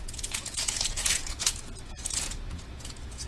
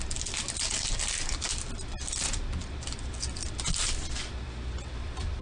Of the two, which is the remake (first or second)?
first